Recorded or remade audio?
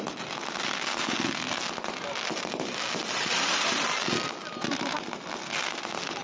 recorded